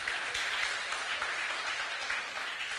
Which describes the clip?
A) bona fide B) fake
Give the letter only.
A